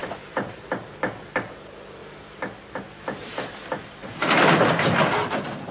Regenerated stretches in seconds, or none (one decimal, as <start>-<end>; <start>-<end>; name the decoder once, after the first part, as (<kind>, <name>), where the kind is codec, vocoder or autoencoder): 0.0-0.9 (vocoder, BigVGAN v2); 2.0-5.7